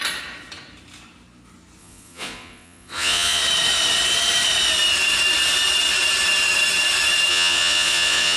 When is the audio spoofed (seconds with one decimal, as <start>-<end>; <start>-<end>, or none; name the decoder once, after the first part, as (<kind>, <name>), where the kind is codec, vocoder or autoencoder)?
1.8-3.4 (vocoder, Vocos); 7.3-8.4